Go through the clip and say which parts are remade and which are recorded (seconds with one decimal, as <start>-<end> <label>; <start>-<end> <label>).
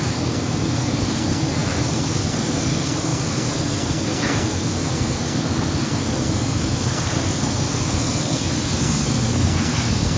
0.0-10.2 remade